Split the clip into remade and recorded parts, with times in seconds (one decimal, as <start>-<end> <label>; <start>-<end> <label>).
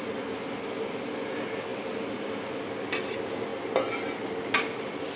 0.0-5.2 recorded